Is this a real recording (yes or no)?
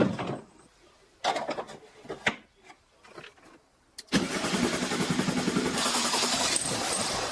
yes